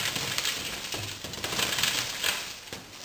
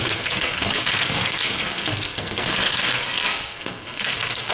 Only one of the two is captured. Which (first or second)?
first